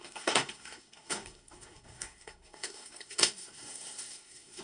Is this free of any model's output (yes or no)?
no